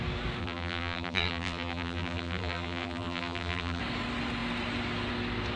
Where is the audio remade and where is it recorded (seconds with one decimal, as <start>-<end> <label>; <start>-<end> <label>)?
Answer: 0.0-0.4 recorded; 0.4-3.8 remade; 3.8-5.6 recorded